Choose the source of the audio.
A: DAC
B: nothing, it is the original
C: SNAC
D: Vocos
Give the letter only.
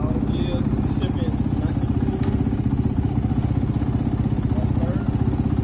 B